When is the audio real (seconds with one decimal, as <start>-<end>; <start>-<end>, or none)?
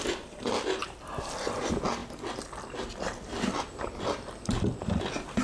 0.0-5.4